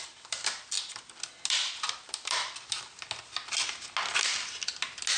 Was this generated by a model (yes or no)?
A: no